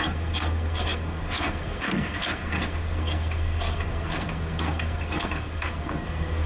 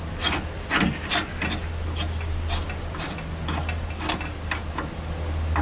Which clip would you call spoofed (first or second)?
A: first